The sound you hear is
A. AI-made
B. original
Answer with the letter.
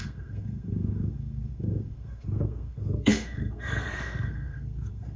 A